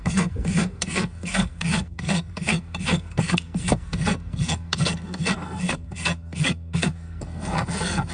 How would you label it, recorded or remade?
remade